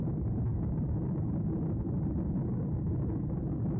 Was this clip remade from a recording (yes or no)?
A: no